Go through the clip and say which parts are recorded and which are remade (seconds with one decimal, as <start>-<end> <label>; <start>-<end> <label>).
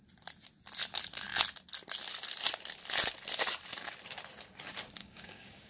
0.0-5.0 recorded; 5.0-5.7 remade